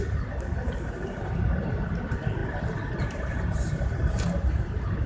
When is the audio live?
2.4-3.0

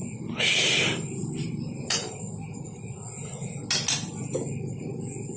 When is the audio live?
0.0-1.2; 2.2-5.4

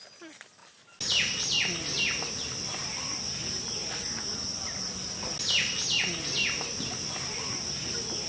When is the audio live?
0.0-8.3

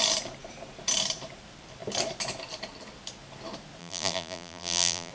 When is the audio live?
0.0-3.8

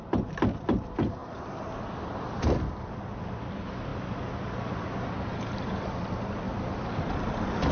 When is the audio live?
1.2-1.8

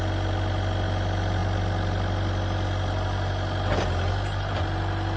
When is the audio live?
0.0-5.2